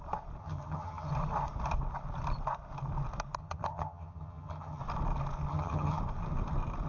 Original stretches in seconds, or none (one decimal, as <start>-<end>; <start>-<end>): 0.0-0.4; 1.1-3.4; 4.8-5.5; 6.0-6.9